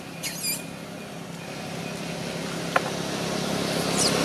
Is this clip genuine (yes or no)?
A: yes